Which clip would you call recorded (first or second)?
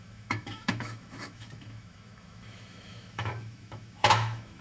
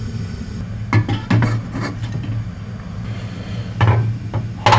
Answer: second